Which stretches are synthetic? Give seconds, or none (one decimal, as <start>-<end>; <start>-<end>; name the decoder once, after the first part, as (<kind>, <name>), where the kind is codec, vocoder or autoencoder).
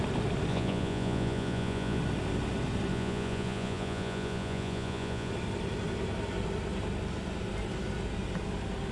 0.5-2.0 (vocoder, Vocos); 2.9-5.3